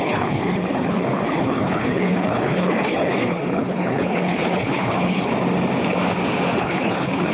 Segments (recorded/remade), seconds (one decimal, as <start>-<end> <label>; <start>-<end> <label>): 0.0-5.3 remade; 5.3-6.6 recorded; 6.6-7.3 remade